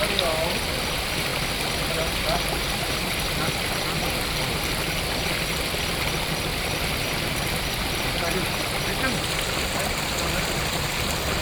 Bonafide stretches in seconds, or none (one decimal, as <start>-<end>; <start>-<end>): 0.0-11.4